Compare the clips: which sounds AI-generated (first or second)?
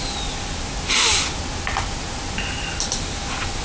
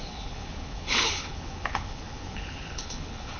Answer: second